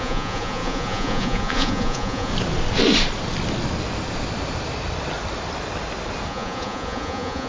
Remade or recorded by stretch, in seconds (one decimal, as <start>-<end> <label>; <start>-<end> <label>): 0.0-2.3 remade; 2.3-6.3 recorded; 6.3-7.5 remade